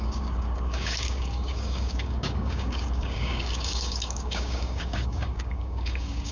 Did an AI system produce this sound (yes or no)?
yes